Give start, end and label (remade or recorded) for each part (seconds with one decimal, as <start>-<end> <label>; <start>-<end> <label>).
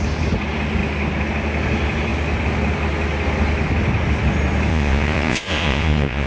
0.0-4.7 recorded; 4.7-6.3 remade